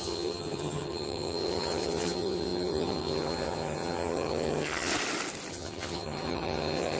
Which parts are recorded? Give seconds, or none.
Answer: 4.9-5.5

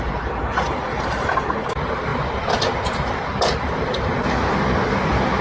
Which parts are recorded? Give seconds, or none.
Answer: 0.0-5.4

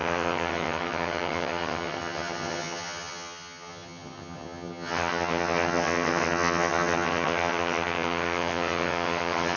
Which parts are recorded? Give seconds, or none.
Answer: none

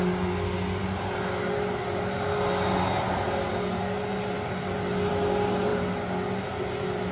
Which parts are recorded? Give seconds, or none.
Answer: 0.0-7.1

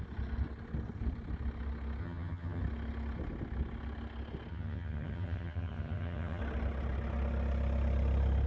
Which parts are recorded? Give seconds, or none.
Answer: 0.0-2.0; 2.6-4.5; 6.4-8.5